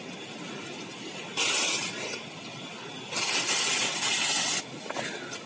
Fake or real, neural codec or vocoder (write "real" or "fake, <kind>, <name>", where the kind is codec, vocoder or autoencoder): real